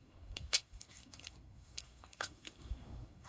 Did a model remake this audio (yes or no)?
yes